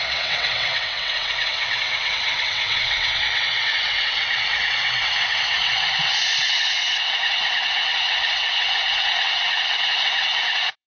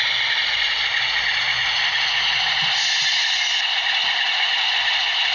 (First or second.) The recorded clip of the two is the second